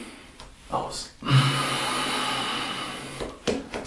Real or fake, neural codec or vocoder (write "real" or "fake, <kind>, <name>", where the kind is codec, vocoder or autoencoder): real